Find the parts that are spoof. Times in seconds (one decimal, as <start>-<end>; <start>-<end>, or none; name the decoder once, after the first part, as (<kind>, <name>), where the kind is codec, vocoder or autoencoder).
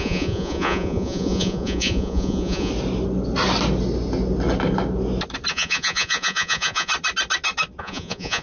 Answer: 0.0-2.7 (vocoder, Vocos); 5.5-6.9; 7.8-8.4